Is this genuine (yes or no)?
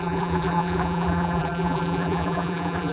no